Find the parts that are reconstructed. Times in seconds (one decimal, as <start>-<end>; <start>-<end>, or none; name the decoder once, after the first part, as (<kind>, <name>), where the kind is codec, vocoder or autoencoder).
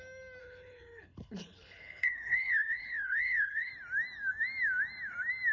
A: 0.4-3.7 (codec, HILCodec)